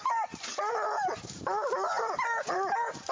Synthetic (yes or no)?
no